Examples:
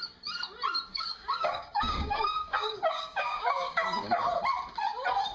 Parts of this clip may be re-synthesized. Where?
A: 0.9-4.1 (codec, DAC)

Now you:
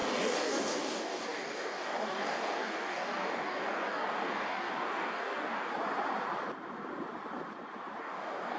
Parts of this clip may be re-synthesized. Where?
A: 0.0-5.7 (codec, DAC); 8.0-8.6

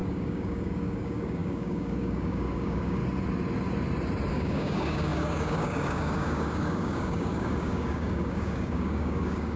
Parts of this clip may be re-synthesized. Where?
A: 0.0-3.0 (codec, DAC); 4.3-9.6

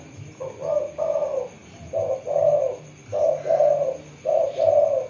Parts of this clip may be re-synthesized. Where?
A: none

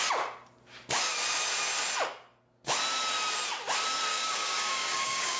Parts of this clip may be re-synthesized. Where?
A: 4.1-5.4 (codec, DAC)

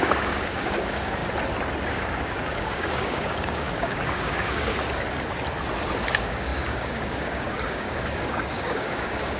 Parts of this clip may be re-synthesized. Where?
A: 0.0-1.2 (codec, DAC); 1.9-4.7; 6.1-9.4